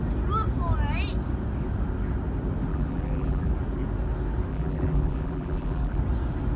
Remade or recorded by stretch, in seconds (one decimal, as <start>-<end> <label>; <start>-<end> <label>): 0.0-2.7 recorded; 2.7-3.5 remade; 3.5-4.5 recorded; 4.5-6.0 remade; 6.0-6.6 recorded